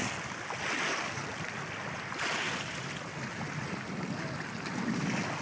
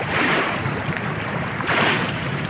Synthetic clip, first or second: second